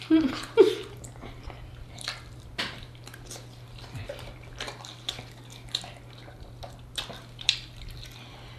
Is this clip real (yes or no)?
yes